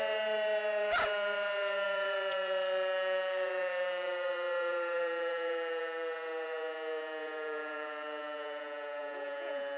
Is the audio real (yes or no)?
no